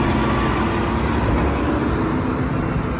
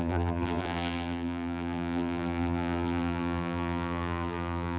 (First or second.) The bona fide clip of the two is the first